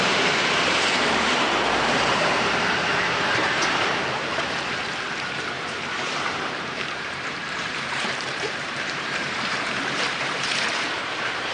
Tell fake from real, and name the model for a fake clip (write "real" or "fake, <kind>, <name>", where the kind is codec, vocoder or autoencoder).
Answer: fake, vocoder, BigVGAN v2